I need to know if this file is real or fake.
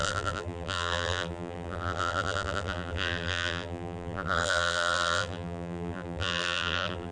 fake